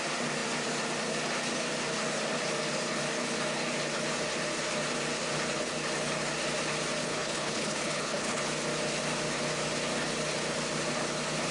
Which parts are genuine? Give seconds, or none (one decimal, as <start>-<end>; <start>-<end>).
0.0-7.0; 8.4-11.5